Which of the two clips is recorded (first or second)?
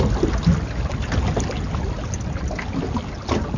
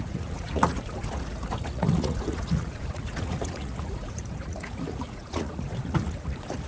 first